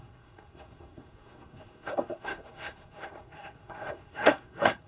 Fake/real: fake